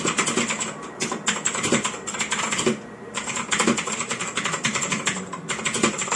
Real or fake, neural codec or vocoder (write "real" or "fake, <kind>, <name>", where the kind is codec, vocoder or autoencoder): real